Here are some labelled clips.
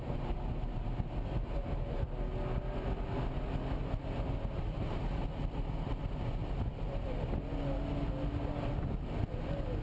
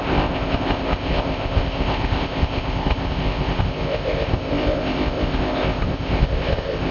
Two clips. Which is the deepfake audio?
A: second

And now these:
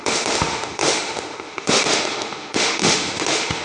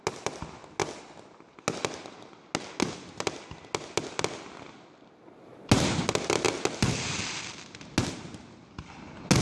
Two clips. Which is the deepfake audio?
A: first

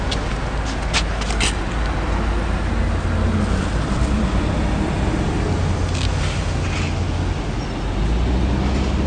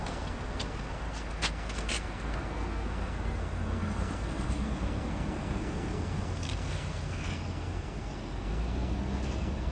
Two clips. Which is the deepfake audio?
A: second